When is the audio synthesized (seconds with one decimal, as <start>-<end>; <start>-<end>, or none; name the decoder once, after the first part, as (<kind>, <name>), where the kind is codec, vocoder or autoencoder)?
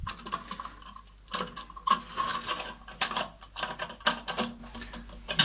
2.3-3.9 (vocoder, BigVGAN v2)